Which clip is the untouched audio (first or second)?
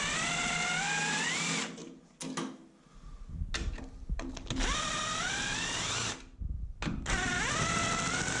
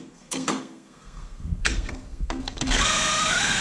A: first